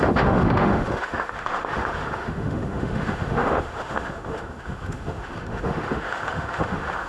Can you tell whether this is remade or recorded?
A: remade